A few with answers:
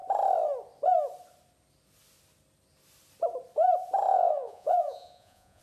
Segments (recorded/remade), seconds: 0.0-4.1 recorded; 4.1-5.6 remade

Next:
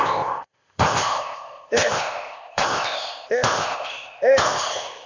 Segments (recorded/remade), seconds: 0.0-5.1 remade

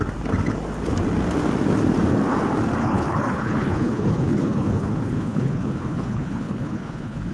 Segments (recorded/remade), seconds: 0.0-2.8 recorded; 2.8-7.3 remade

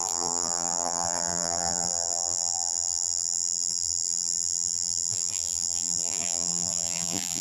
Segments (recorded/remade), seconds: 0.0-7.4 remade